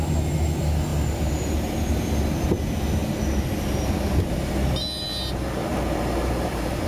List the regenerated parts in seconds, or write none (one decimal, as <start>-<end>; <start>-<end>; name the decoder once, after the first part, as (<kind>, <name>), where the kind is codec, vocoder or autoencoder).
0.9-2.4 (vocoder, BigVGAN v2); 5.7-6.9

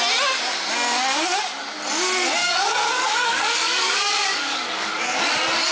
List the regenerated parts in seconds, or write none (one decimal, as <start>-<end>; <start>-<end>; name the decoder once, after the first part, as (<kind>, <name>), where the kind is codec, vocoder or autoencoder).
2.4-5.3 (codec, DAC)

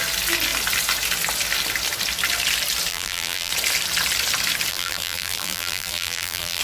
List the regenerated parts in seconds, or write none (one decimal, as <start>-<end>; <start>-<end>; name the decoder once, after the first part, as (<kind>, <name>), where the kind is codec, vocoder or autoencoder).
2.9-3.5 (vocoder, BigVGAN v2); 4.7-6.6

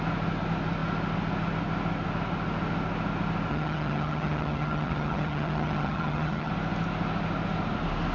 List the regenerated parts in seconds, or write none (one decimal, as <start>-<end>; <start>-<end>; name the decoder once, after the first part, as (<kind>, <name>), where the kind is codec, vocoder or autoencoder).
3.5-6.5 (vocoder, HiFi-GAN)

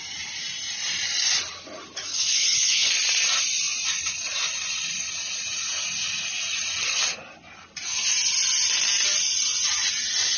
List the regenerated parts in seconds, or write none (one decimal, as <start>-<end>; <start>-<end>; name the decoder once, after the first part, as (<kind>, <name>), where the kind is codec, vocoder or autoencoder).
2.1-2.9 (codec, HILCodec)

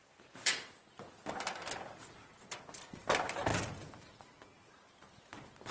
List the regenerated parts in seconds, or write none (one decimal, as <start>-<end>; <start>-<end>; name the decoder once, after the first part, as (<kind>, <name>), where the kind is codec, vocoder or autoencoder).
3.5-4.7 (vocoder, BigVGAN v2)

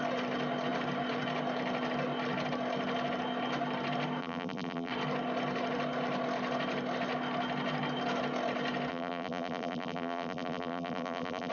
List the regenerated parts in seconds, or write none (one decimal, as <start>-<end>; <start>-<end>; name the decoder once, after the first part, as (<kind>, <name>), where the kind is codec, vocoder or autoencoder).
4.2-4.9 (vocoder, BigVGAN v2); 8.9-11.5